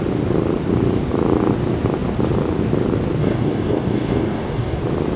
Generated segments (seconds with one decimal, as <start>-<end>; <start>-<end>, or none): 3.2-4.8